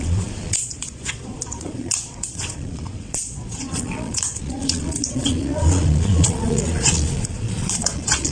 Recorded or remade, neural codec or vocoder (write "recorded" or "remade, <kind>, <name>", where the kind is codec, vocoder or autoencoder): remade, vocoder, Vocos